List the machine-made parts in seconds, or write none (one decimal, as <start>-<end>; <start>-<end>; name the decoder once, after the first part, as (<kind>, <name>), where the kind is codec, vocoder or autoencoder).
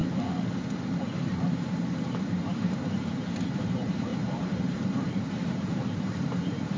1.1-6.8 (vocoder, BigVGAN v2)